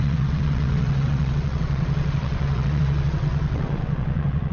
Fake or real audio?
fake